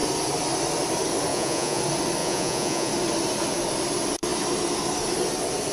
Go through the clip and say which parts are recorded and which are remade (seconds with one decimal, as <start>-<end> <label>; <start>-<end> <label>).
0.0-1.3 recorded; 1.3-1.8 remade; 1.8-2.2 recorded; 2.2-2.9 remade; 2.9-5.7 recorded